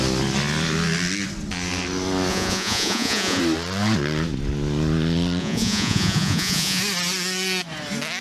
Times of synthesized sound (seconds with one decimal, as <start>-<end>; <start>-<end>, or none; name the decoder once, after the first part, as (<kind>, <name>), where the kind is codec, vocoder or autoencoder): 2.3-3.4 (vocoder, Vocos); 5.4-6.8